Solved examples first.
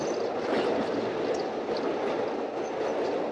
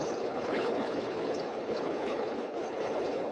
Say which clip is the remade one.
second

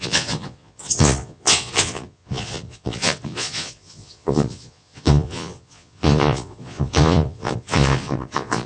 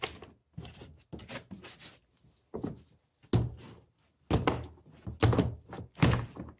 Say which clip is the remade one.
first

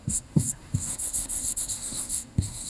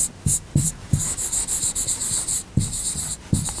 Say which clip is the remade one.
first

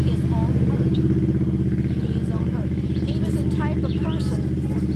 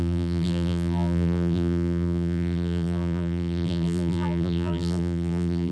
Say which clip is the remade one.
second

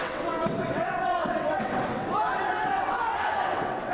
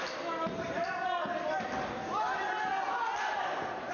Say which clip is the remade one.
first